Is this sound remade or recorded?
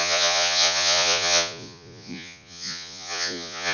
remade